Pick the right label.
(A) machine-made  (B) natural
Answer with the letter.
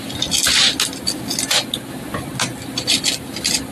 B